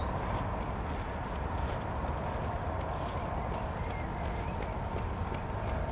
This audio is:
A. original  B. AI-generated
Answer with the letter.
A